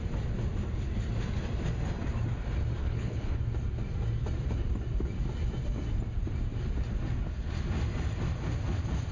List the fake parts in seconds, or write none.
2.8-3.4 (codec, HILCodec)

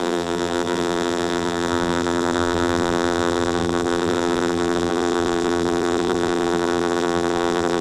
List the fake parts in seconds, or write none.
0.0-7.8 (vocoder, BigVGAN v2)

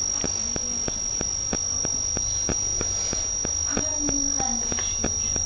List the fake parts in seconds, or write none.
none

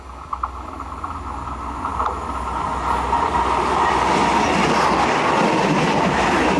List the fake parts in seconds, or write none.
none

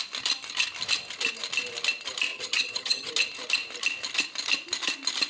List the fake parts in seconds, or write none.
2.3-3.1 (vocoder, HiFi-GAN)

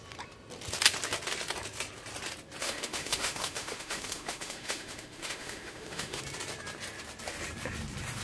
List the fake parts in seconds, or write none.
2.6-6.2 (autoencoder, DAC-VAE)

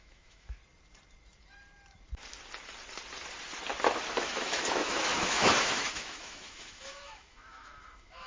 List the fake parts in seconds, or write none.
0.0-0.6 (autoencoder, DAC-VAE); 4.1-8.3

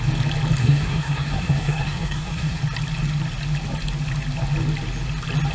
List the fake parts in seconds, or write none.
0.6-2.6 (codec, SNAC)